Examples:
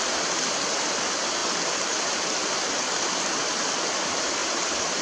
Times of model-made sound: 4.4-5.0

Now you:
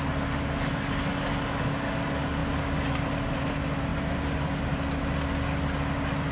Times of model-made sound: none